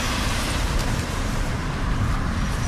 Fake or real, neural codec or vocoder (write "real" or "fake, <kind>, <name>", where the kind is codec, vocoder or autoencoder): fake, vocoder, BigVGAN v2